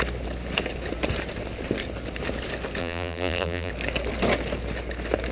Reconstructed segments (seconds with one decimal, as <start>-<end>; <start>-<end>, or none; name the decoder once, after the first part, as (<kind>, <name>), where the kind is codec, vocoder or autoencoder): 2.8-3.7 (vocoder, BigVGAN v2)